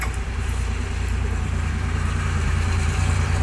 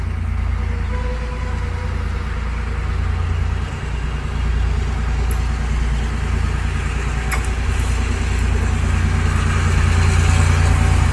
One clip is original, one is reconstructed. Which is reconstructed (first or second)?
first